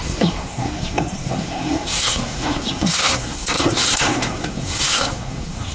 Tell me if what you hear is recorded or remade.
remade